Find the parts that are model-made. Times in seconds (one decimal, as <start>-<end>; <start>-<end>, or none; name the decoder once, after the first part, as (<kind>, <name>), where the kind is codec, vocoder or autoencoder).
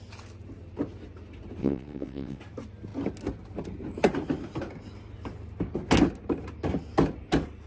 1.6-2.4 (vocoder, WaveNeXt)